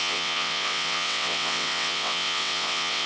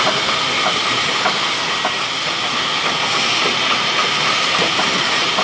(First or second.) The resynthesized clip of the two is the first